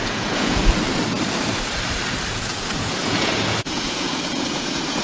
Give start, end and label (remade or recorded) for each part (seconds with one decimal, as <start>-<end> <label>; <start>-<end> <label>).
0.0-0.6 remade; 0.6-2.3 recorded; 2.3-5.0 remade